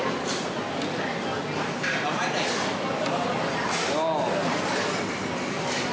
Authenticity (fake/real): real